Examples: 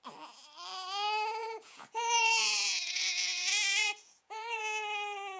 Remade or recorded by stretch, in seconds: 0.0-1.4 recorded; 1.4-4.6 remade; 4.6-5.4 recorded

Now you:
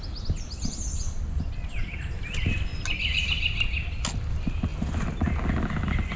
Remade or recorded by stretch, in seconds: 0.0-4.7 recorded; 4.7-5.3 remade; 5.3-6.2 recorded

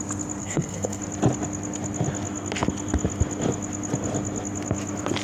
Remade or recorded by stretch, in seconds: 0.0-0.4 recorded; 0.4-1.0 remade; 1.0-5.2 recorded